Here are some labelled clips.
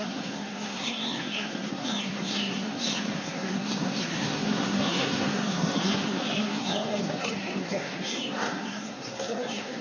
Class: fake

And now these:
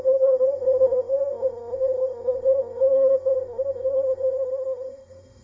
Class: fake